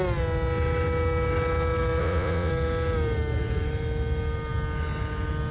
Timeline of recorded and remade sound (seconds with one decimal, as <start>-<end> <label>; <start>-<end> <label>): 0.0-2.0 recorded; 2.0-2.5 remade; 2.5-5.5 recorded